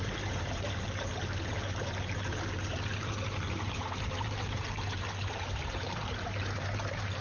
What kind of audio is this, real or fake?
fake